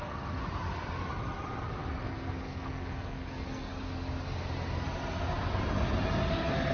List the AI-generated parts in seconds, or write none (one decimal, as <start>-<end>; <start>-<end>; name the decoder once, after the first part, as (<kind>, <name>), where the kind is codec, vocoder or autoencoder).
0.0-0.4 (codec, SNAC); 2.0-3.7; 6.3-6.7